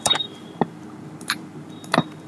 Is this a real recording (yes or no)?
no